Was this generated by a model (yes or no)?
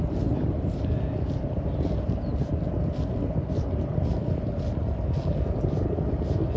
no